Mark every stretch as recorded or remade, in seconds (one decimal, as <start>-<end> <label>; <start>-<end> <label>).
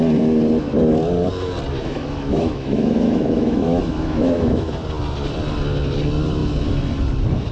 0.0-1.8 recorded; 1.8-4.7 remade; 4.7-7.5 recorded